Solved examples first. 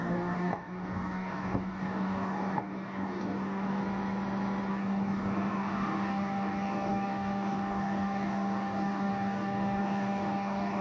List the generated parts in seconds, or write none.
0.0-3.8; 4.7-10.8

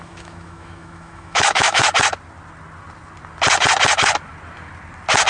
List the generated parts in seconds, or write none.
0.0-1.8

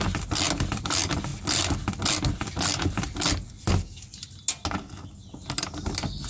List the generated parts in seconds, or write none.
none